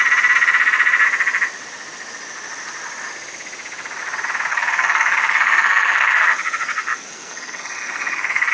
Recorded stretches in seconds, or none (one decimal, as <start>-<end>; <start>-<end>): 0.0-4.5